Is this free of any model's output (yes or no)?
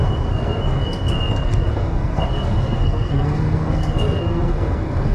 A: no